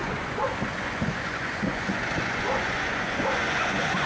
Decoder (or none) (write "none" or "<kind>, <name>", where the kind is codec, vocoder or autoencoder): vocoder, Vocos